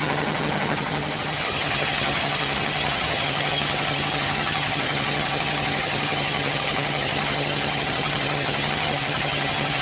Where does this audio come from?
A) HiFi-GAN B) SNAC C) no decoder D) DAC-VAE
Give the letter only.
A